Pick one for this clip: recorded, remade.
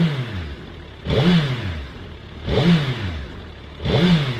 recorded